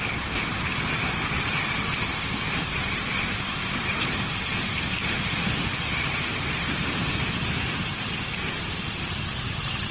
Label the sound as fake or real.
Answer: fake